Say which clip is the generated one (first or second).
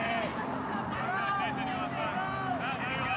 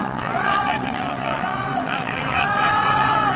second